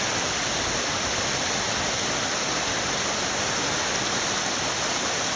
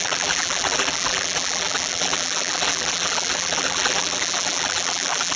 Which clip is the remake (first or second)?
second